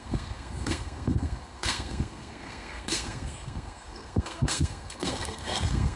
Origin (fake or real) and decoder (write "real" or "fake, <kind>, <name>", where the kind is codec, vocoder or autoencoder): fake, codec, SNAC